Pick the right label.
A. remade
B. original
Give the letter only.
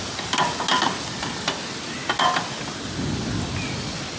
B